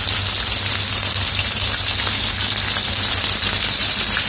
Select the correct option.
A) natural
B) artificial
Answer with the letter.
A